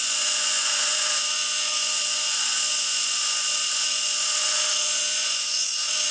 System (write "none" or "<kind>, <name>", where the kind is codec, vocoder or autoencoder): vocoder, Vocos